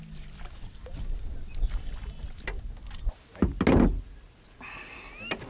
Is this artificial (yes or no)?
no